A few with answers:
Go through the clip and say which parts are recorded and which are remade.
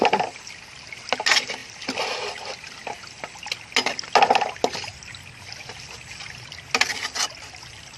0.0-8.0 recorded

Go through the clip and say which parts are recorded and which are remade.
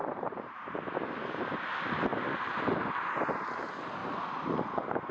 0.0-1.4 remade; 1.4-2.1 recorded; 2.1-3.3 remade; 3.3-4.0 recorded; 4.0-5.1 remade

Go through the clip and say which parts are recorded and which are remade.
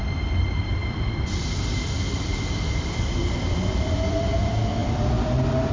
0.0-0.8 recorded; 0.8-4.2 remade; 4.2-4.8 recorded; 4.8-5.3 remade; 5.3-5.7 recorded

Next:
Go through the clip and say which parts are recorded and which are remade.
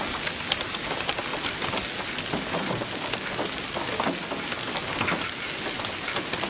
0.0-6.5 recorded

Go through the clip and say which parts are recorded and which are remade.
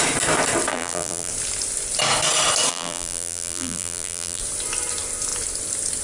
0.0-0.7 recorded; 0.7-1.3 remade; 1.3-2.7 recorded; 2.7-4.4 remade; 4.4-6.0 recorded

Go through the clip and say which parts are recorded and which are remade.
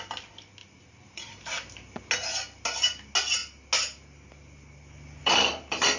0.0-0.6 recorded; 0.6-2.0 remade; 2.0-5.2 recorded; 5.2-6.0 remade